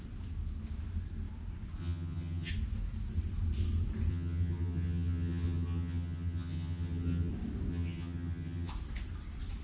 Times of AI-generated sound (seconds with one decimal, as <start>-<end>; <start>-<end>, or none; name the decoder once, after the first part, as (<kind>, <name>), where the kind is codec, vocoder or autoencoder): 1.8-2.5 (vocoder, HiFi-GAN); 4.1-7.3; 7.7-8.7